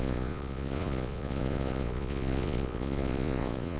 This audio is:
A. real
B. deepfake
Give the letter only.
B